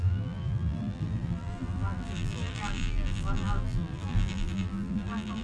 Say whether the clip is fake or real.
fake